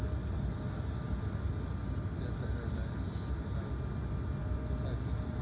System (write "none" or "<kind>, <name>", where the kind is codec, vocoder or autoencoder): none